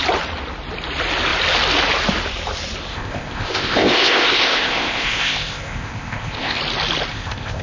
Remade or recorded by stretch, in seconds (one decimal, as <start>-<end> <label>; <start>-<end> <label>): 0.0-2.9 recorded; 2.9-6.6 remade; 6.6-7.1 recorded; 7.1-7.6 remade